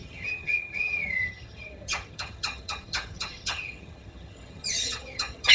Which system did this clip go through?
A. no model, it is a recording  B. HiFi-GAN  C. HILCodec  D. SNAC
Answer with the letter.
B